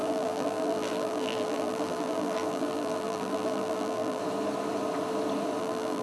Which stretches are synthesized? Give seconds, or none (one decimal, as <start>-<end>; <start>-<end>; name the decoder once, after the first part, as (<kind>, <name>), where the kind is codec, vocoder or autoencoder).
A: 0.0-4.2 (vocoder, BigVGAN v2); 5.6-6.0